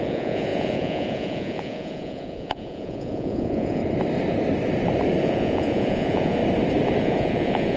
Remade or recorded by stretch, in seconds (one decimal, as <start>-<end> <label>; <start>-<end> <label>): 0.0-3.8 remade; 3.8-5.2 recorded; 5.2-6.4 remade; 6.4-7.0 recorded; 7.0-7.8 remade